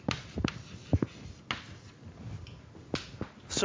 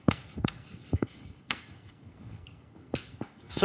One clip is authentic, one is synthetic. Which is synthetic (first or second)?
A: second